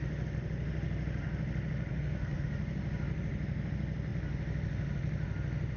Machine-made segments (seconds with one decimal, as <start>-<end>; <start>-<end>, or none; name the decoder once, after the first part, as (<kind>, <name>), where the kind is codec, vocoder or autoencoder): 1.9-2.5 (codec, SNAC)